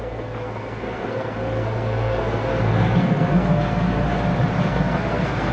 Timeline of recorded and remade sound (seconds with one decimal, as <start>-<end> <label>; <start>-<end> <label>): 0.0-4.0 remade; 4.0-4.6 recorded; 4.6-5.5 remade